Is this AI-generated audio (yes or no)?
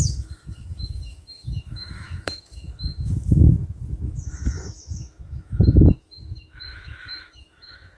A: yes